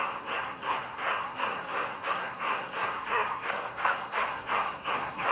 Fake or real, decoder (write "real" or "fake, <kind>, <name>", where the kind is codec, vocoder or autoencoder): fake, codec, SNAC